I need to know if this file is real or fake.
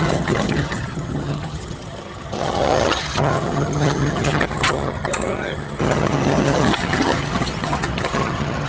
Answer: fake